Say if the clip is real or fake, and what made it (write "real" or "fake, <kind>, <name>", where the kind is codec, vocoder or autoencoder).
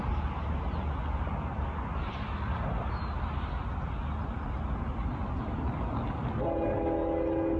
real